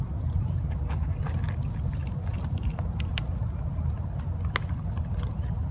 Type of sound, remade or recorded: recorded